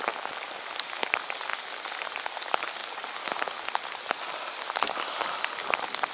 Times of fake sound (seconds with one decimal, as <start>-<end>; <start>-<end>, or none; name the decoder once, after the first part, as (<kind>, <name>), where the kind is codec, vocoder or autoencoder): 2.8-3.4 (vocoder, BigVGAN v2)